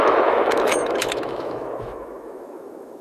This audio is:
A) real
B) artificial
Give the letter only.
B